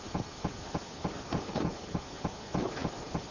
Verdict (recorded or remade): recorded